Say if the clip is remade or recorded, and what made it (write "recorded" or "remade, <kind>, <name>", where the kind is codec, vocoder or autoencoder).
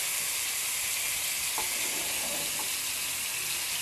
recorded